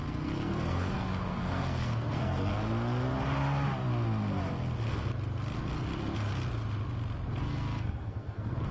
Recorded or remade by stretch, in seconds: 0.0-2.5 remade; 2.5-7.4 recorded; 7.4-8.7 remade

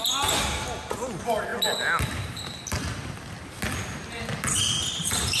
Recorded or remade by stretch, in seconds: 0.0-5.4 recorded

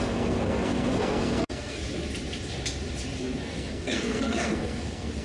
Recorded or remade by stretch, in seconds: 0.0-1.8 remade; 1.8-3.2 recorded; 3.2-5.2 remade

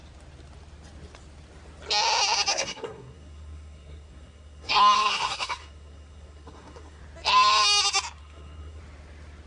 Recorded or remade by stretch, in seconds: 0.0-2.5 recorded; 2.5-7.0 remade; 7.0-8.2 recorded; 8.2-8.8 remade; 8.8-9.5 recorded

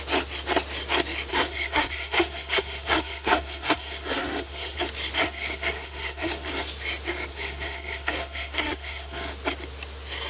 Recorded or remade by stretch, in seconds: 0.0-1.3 recorded; 1.3-4.8 remade; 4.8-5.2 recorded; 5.2-6.5 remade; 6.5-7.3 recorded; 7.3-9.3 remade; 9.3-10.3 recorded

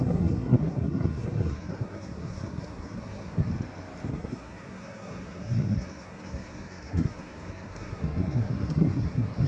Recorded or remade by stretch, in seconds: 0.0-3.5 remade; 3.5-4.1 recorded; 4.1-9.5 remade

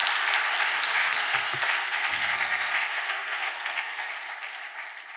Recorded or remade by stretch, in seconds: 0.0-1.0 recorded; 1.0-4.1 remade; 4.1-5.2 recorded